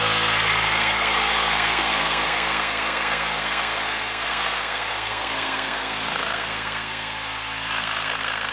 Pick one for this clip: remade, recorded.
remade